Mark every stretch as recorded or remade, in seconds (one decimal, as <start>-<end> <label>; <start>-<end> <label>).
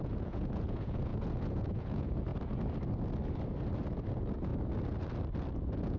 0.0-2.3 remade; 2.3-4.1 recorded; 4.1-4.5 remade; 4.5-5.5 recorded; 5.5-6.0 remade